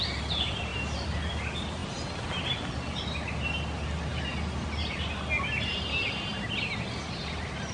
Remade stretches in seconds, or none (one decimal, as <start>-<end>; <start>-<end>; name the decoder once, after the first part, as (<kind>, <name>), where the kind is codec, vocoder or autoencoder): 0.7-1.2 (vocoder, BigVGAN v2)